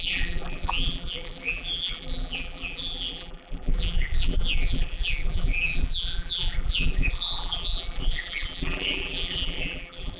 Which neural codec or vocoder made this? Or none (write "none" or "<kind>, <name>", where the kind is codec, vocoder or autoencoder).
vocoder, BigVGAN v2